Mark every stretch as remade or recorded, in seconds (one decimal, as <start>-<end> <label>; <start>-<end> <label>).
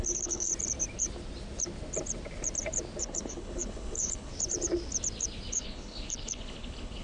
0.0-0.5 remade; 0.5-3.0 recorded; 3.0-4.3 remade; 4.3-5.5 recorded; 5.5-7.0 remade